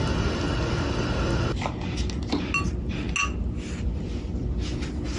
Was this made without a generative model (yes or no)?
yes